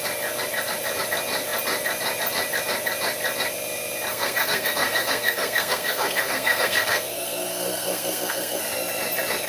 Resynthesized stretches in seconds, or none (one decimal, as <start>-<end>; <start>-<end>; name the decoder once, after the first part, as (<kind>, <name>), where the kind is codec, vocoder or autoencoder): 4.1-8.6 (codec, SNAC)